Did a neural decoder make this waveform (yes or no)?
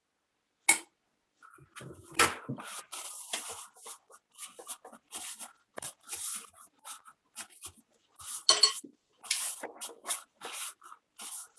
no